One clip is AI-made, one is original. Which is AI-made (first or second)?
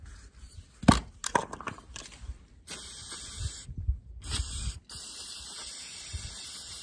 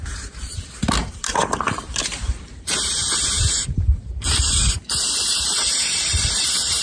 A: second